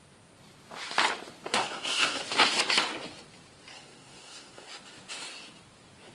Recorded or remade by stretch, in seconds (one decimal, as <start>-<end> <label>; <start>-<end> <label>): 0.0-1.5 recorded; 1.5-2.2 remade; 2.2-3.7 recorded; 3.7-4.7 remade; 4.7-6.1 recorded